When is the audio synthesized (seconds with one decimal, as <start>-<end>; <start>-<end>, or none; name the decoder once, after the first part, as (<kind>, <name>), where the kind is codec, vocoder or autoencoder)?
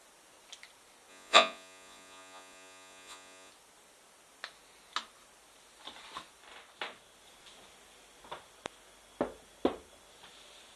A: 1.1-3.5 (vocoder, Vocos)